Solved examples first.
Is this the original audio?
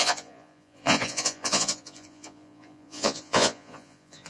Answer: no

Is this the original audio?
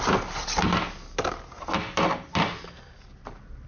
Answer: yes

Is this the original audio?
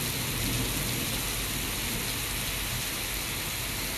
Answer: yes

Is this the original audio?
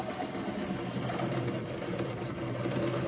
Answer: yes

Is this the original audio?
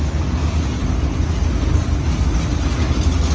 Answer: yes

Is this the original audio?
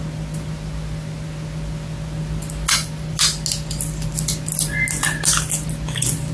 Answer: yes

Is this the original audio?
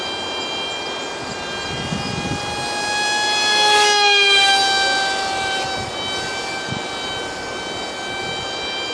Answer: yes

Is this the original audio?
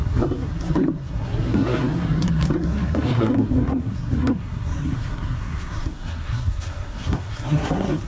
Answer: no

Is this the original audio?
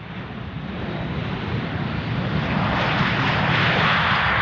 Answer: yes